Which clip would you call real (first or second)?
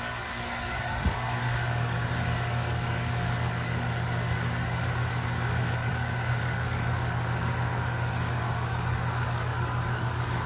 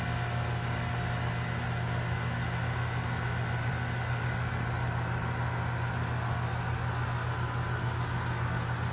second